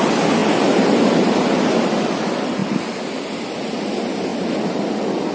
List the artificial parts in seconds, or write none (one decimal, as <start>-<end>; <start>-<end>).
none